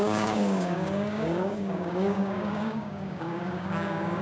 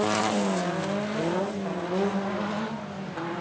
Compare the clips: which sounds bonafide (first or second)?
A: second